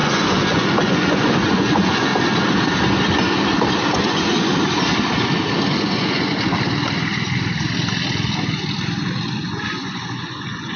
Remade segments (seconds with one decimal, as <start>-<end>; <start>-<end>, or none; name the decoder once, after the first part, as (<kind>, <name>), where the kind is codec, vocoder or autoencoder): 0.0-2.1 (vocoder, Vocos); 3.9-4.5; 5.7-6.3; 9.4-10.8